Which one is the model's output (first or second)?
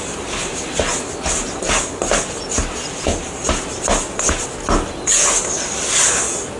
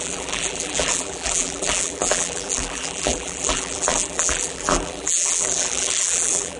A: second